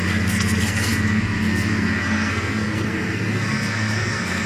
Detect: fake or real fake